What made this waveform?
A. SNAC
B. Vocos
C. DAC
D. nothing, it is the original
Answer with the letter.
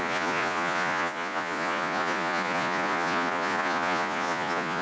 B